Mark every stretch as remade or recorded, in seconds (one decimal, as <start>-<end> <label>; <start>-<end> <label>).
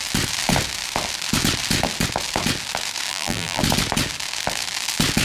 0.0-3.1 recorded; 3.1-3.6 remade; 3.6-5.2 recorded